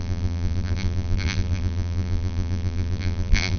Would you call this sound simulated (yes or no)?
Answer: yes